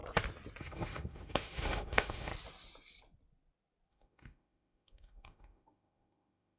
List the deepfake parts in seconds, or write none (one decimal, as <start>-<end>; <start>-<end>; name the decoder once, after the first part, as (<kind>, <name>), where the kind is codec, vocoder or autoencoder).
0.6-2.3 (autoencoder, DAC-VAE); 3.9-6.6